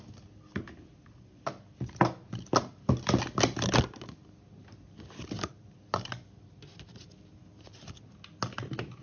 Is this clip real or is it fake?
real